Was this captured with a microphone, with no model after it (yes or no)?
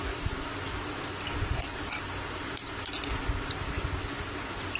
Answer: yes